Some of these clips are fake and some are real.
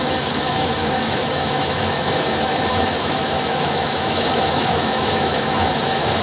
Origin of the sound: fake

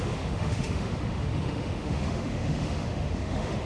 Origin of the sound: fake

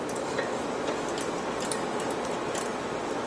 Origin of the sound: real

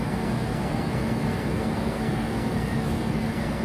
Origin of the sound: fake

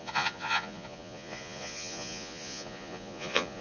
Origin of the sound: fake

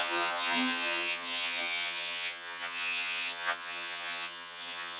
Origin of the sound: fake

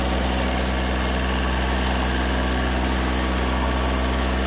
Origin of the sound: real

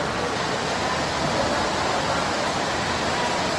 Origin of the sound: real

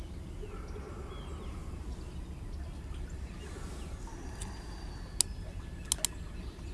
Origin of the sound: real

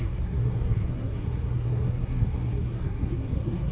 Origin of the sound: fake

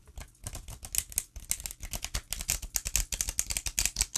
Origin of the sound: real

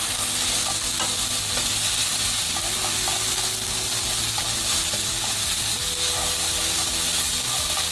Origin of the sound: real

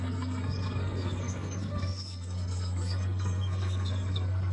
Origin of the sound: fake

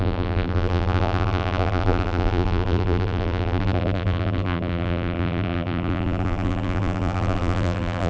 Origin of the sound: fake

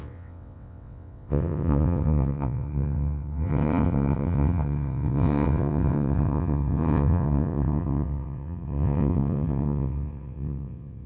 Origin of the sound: fake